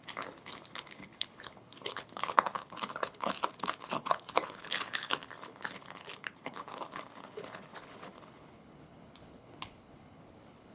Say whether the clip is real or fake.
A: fake